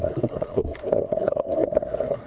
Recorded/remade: remade